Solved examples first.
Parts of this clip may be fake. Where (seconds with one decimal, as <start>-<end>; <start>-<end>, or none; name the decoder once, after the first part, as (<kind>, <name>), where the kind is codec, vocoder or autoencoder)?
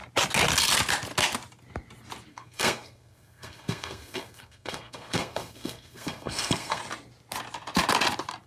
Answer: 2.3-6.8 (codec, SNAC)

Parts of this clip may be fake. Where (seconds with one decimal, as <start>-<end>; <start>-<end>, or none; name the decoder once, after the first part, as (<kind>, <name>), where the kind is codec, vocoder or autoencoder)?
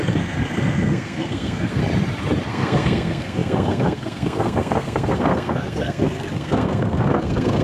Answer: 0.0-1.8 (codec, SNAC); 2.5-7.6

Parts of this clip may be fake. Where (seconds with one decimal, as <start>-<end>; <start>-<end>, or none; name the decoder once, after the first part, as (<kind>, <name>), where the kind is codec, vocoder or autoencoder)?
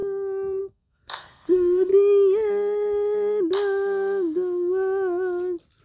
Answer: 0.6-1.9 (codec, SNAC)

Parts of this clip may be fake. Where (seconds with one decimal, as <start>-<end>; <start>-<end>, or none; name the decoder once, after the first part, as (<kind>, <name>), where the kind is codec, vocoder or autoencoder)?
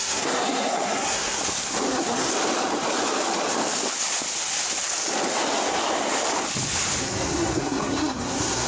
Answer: 0.0-1.4 (codec, SNAC); 1.9-2.3; 7.0-8.7